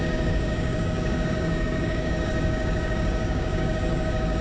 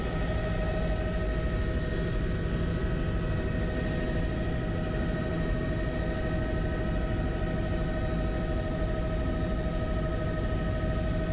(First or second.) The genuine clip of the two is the second